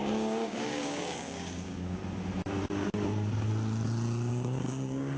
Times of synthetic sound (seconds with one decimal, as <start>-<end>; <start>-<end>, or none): 0.0-2.0; 4.3-5.2